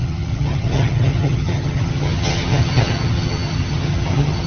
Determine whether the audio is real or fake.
fake